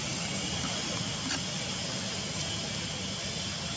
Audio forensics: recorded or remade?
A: recorded